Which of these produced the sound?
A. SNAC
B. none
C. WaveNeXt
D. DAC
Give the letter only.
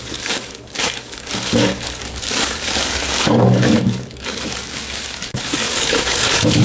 D